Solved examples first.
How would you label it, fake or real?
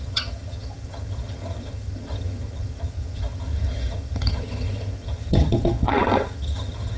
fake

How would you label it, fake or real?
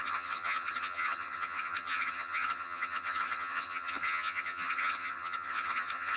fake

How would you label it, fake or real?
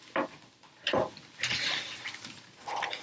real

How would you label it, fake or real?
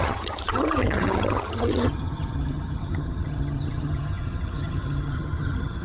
fake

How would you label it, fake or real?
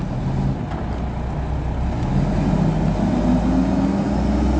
real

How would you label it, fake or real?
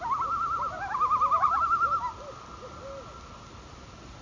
real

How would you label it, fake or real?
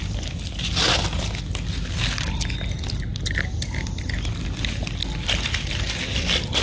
real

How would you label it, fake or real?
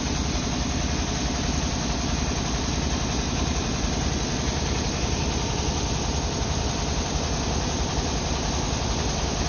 real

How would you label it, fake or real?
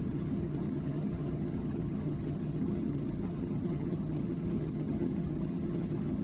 fake